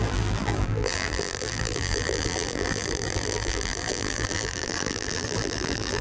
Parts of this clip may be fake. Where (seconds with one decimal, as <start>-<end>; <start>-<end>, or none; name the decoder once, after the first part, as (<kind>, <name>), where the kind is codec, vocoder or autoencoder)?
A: 0.0-6.0 (vocoder, BigVGAN v2)